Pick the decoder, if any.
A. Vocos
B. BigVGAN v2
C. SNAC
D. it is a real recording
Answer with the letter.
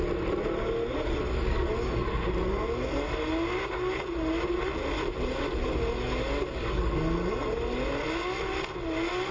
D